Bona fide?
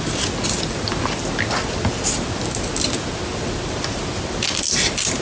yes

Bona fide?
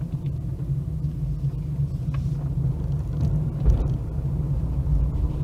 yes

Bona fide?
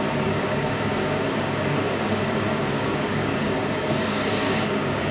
no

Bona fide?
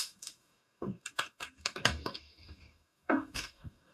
no